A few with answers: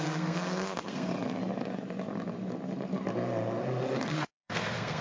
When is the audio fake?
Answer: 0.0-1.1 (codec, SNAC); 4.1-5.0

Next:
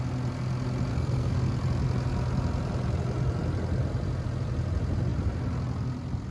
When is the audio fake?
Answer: 0.9-1.5 (codec, SNAC)

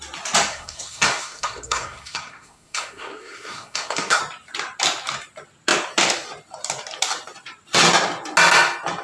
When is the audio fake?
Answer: 0.5-4.2 (codec, SNAC)

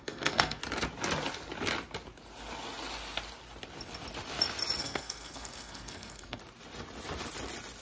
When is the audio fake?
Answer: 0.0-0.6 (codec, SNAC); 4.8-6.4

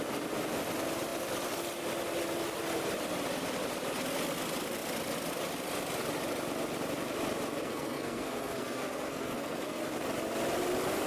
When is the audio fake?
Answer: 7.6-9.8 (codec, SNAC)